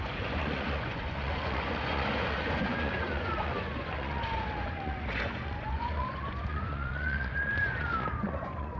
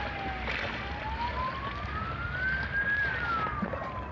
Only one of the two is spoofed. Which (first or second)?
first